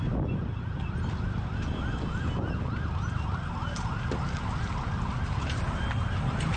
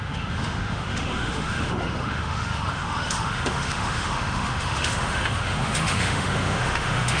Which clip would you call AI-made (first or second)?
second